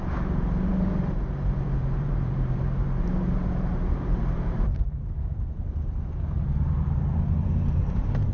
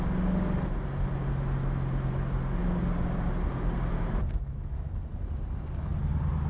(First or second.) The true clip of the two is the second